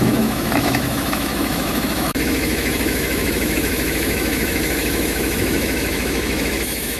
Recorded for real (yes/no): no